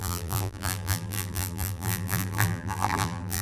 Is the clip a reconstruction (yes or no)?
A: yes